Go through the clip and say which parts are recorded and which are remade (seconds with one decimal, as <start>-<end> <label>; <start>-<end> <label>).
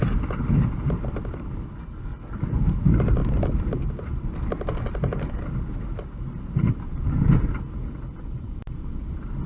0.0-9.5 recorded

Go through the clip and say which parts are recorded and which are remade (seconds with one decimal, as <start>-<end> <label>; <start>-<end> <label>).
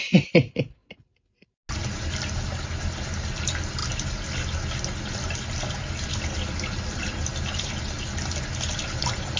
0.0-9.4 recorded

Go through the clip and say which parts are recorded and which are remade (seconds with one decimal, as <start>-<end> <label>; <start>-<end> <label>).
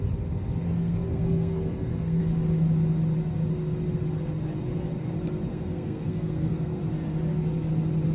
0.0-0.6 recorded; 0.6-2.2 remade; 2.2-5.5 recorded; 5.5-6.8 remade; 6.8-8.1 recorded